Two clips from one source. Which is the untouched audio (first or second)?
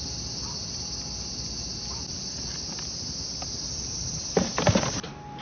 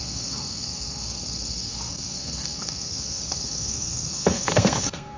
first